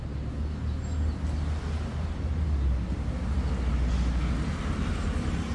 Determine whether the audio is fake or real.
real